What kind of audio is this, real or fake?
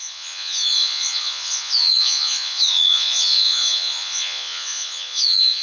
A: fake